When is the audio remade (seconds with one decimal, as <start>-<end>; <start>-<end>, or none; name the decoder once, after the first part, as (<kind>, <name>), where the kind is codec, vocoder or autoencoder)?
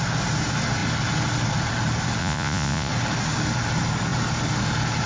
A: 2.2-2.9 (vocoder, Vocos)